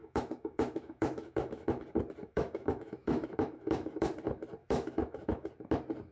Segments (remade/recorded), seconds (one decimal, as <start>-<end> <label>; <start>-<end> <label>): 0.0-1.8 remade; 1.8-2.2 recorded; 2.2-4.1 remade; 4.1-4.6 recorded; 4.6-5.5 remade; 5.5-6.1 recorded